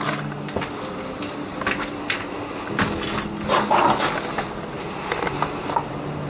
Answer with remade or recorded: recorded